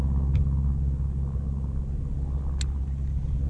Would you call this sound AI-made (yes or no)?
no